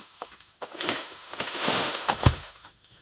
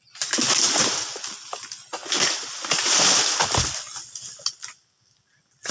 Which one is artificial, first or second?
first